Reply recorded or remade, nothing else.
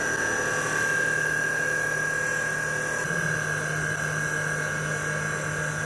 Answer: recorded